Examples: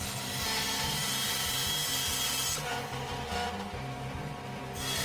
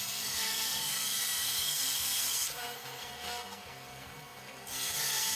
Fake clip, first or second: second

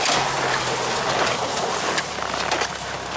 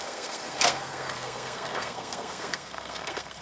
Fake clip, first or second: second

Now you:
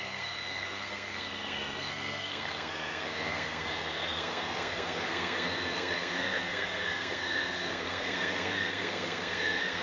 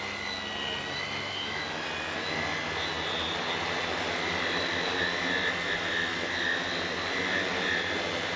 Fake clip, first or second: first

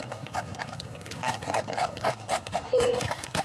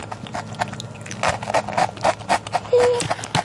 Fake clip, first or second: first